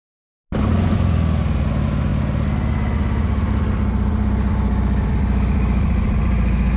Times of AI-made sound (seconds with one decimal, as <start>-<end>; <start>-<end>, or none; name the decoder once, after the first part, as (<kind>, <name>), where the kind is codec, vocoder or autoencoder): none